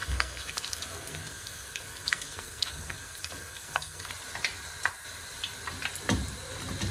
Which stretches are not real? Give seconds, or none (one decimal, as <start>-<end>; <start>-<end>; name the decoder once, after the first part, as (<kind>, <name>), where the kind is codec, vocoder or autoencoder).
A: 0.0-4.1 (codec, SNAC)